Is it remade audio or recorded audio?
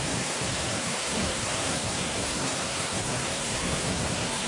remade